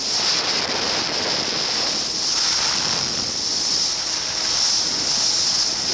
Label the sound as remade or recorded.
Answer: recorded